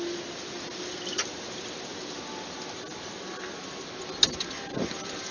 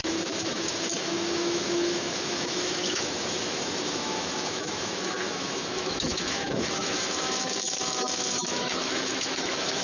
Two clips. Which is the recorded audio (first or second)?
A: first